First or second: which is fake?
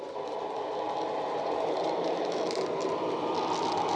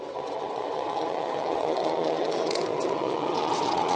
second